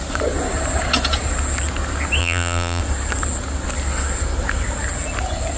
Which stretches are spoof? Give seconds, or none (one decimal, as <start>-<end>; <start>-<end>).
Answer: 2.2-2.8

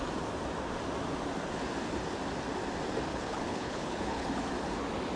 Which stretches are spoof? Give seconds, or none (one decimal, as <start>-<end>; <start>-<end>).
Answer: 3.1-4.5

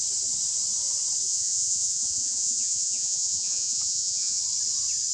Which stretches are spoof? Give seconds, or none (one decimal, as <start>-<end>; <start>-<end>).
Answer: 1.3-4.4

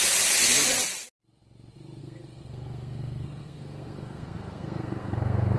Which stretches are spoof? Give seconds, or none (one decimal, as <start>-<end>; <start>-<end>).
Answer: 2.0-5.6